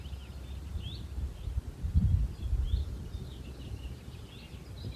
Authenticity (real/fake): real